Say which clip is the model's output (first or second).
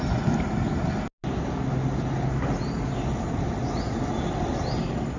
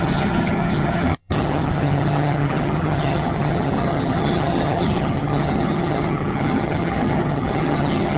second